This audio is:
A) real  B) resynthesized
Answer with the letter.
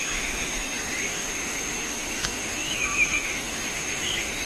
B